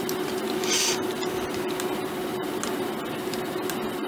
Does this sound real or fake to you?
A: real